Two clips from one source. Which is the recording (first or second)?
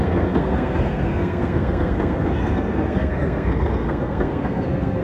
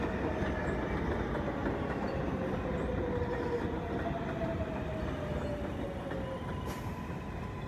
second